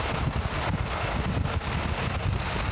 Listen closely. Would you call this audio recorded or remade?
recorded